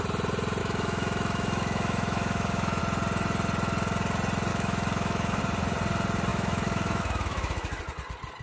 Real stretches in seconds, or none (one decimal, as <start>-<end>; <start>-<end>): 0.0-0.6; 2.8-4.5; 5.4-6.3; 7.8-8.4